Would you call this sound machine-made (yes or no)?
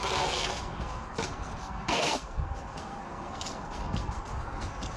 yes